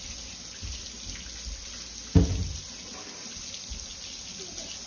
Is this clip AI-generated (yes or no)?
no